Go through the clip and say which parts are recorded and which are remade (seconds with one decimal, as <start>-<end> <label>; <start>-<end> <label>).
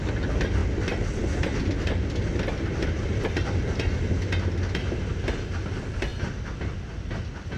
0.0-7.6 recorded